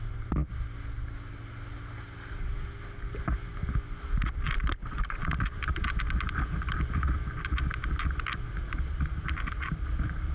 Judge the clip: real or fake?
real